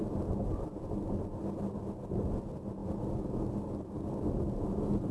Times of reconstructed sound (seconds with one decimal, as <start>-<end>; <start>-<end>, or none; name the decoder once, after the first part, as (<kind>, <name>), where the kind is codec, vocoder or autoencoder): none